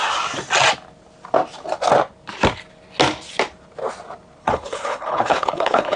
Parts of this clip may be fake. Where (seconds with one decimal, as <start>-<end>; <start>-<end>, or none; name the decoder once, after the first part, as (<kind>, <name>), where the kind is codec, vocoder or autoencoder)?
4.4-6.0 (codec, HILCodec)